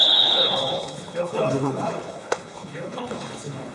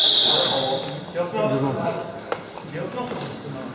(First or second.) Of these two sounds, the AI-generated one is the first